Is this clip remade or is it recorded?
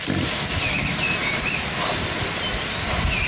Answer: recorded